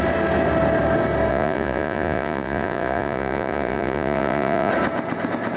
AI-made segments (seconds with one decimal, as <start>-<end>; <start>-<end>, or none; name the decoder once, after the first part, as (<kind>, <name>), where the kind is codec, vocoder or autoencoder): 1.3-4.7 (vocoder, Vocos)